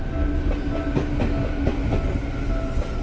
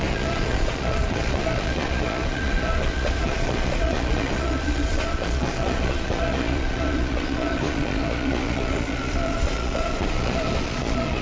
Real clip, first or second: first